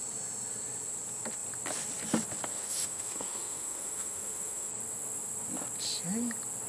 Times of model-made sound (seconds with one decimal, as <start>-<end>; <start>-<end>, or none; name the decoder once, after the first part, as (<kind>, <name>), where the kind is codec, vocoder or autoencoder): 2.5-4.7 (autoencoder, DAC-VAE)

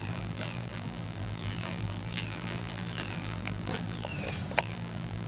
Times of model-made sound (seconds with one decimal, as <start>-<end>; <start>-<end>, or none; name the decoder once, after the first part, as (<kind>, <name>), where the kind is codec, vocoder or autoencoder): 0.0-4.1 (vocoder, BigVGAN v2); 4.6-5.3

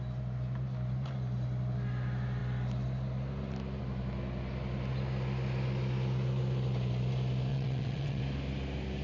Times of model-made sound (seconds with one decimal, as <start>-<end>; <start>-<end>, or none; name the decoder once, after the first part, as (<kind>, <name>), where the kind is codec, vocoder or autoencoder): 7.5-8.2 (vocoder, WaveNeXt)

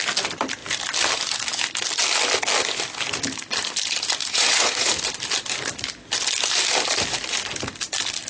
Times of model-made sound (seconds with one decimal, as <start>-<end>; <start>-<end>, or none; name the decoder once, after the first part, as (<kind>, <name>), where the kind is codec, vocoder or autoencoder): 4.2-4.9 (vocoder, Vocos)